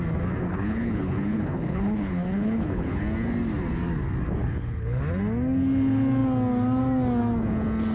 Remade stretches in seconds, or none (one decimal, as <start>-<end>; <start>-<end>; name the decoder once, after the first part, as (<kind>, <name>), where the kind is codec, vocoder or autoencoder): 0.5-3.0 (codec, HILCodec); 4.4-5.0